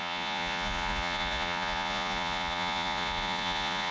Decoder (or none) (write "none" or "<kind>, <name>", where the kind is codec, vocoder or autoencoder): vocoder, Vocos